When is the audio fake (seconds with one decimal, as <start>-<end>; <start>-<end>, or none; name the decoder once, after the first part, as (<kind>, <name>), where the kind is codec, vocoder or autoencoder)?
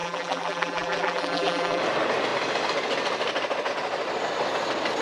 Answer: 0.0-1.8 (vocoder, BigVGAN v2)